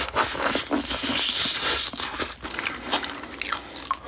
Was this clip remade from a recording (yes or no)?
no